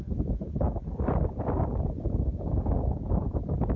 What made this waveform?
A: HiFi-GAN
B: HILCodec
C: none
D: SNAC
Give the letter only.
C